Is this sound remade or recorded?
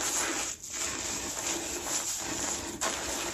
recorded